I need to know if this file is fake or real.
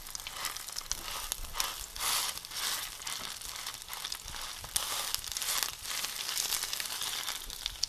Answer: real